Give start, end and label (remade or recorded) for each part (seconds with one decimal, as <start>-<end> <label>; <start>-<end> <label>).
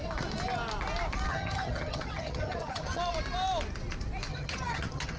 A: 0.0-1.3 recorded; 1.3-3.0 remade; 3.0-4.3 recorded; 4.3-5.2 remade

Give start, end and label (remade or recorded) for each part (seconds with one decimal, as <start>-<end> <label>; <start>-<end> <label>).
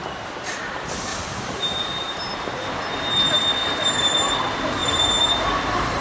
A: 0.0-1.1 recorded; 1.1-2.2 remade; 2.2-3.6 recorded; 3.6-4.1 remade; 4.1-4.8 recorded; 4.8-6.0 remade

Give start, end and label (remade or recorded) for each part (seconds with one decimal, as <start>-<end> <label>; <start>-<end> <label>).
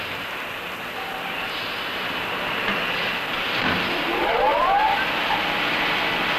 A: 0.0-6.4 recorded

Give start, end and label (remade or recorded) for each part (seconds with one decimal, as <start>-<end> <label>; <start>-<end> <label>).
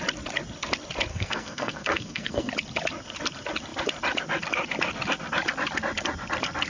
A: 0.0-1.1 recorded; 1.1-2.5 remade; 2.5-6.7 recorded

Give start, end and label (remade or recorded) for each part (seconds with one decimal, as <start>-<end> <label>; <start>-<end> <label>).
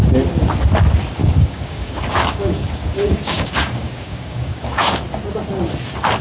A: 0.0-1.2 recorded; 1.2-4.9 remade; 4.9-6.2 recorded